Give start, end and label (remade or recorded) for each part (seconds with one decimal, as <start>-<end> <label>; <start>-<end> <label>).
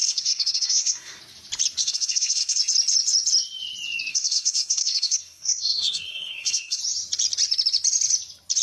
0.0-1.2 remade; 1.2-1.8 recorded; 1.8-2.6 remade; 2.6-4.1 recorded; 4.1-6.8 remade; 6.8-8.6 recorded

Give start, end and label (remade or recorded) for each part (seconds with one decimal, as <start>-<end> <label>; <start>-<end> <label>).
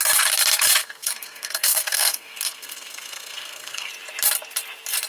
0.0-0.8 recorded; 0.8-3.9 remade; 3.9-5.1 recorded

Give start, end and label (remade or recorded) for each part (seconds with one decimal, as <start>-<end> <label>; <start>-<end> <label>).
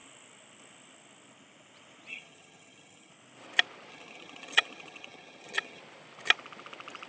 0.0-2.1 recorded; 2.1-3.1 remade; 3.1-3.9 recorded; 3.9-5.8 remade; 5.8-7.1 recorded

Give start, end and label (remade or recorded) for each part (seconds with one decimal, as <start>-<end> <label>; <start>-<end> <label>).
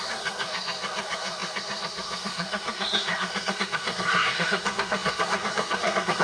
0.0-6.2 remade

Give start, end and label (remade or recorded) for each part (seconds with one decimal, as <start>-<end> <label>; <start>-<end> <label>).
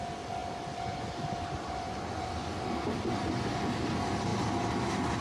0.0-5.2 recorded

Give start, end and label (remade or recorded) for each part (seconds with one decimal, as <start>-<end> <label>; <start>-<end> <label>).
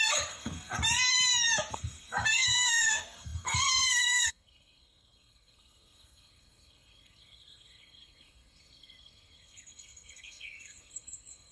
0.0-0.8 remade; 0.8-1.7 recorded; 1.7-11.5 remade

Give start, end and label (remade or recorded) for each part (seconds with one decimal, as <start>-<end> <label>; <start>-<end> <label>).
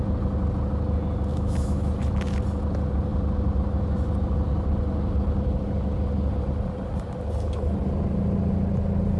0.0-1.3 recorded; 1.3-1.9 remade; 1.9-9.2 recorded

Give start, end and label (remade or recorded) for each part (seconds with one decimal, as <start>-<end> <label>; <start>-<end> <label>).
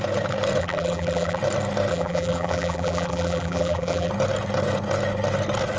0.0-0.6 recorded; 0.6-1.4 remade; 1.4-1.9 recorded; 1.9-4.1 remade; 4.1-5.8 recorded